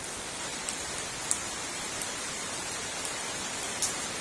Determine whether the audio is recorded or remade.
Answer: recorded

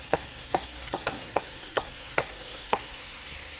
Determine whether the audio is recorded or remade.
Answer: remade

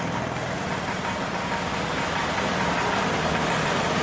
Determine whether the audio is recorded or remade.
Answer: recorded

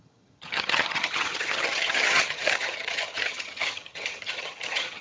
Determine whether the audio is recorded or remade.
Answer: remade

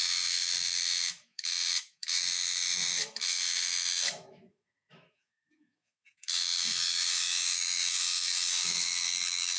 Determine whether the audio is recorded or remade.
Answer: remade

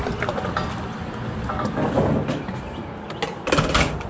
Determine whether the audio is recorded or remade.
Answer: recorded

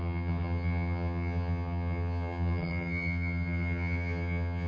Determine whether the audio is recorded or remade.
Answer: remade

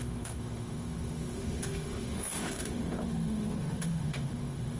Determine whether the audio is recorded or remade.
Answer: remade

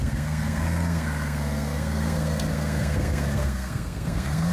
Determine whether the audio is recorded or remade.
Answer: remade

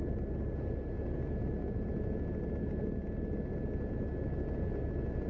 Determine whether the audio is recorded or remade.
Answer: recorded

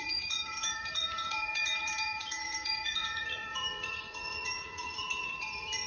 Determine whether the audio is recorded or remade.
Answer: remade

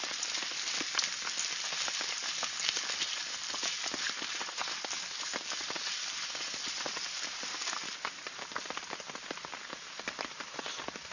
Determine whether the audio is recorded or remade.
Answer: recorded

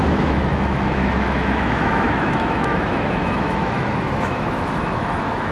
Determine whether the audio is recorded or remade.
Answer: remade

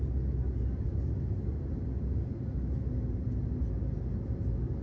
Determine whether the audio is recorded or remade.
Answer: recorded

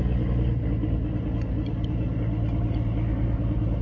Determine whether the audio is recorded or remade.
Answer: recorded